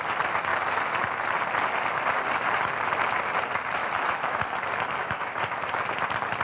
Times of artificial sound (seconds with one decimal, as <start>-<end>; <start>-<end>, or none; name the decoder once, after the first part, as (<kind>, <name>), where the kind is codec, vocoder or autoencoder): 3.8-4.4 (autoencoder, DAC-VAE); 5.0-5.5